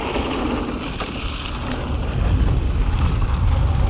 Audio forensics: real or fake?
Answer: real